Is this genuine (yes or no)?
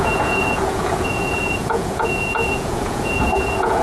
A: no